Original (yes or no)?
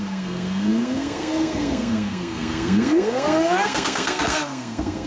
no